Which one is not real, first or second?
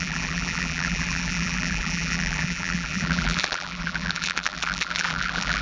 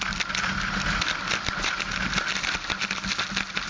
first